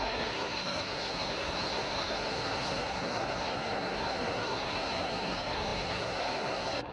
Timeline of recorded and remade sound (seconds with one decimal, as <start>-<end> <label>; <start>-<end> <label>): 0.0-6.9 remade